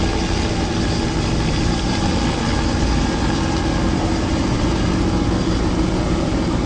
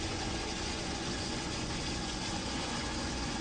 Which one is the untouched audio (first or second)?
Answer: first